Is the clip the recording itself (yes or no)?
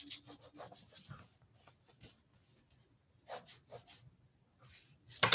yes